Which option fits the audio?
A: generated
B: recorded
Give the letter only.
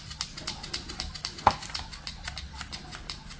B